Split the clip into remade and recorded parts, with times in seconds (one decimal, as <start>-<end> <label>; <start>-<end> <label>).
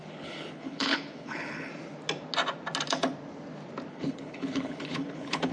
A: 0.0-1.7 remade; 1.7-3.9 recorded; 3.9-5.5 remade